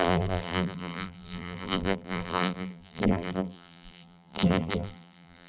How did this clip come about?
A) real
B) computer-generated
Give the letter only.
B